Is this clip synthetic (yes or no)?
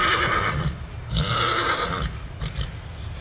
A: no